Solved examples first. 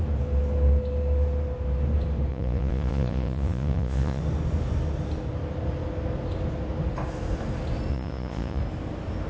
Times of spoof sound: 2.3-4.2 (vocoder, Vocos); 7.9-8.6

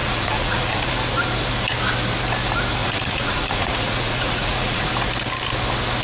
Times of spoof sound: 0.0-0.9 (vocoder, Vocos); 2.8-4.8

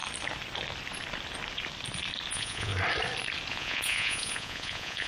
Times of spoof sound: 2.3-2.7 (vocoder, Vocos); 3.5-5.1

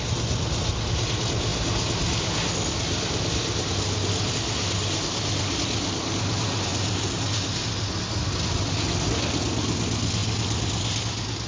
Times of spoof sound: none